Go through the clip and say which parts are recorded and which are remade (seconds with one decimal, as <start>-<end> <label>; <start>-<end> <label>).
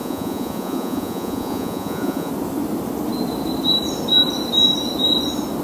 0.0-2.3 remade; 2.3-5.6 recorded